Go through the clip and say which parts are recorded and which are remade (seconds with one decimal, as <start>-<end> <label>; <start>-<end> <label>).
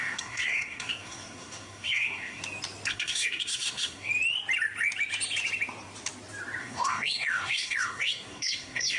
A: 0.0-2.4 remade; 2.4-2.9 recorded; 2.9-4.1 remade; 4.1-6.6 recorded; 6.6-9.0 remade